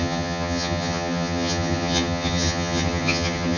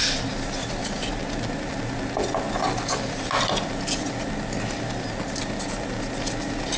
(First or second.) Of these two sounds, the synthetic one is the first